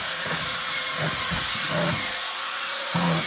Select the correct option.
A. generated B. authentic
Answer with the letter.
A